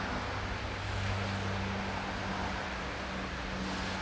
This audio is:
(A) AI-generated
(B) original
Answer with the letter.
B